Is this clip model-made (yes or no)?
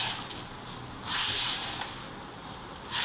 no